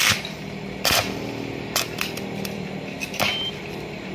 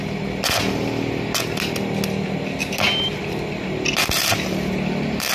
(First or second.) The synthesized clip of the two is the first